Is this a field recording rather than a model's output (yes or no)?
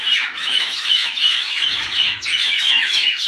no